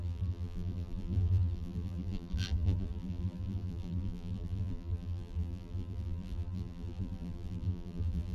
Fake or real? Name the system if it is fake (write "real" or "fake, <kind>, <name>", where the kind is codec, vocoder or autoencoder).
fake, vocoder, BigVGAN v2